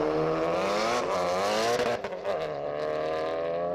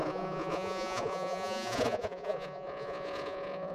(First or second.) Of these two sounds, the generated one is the second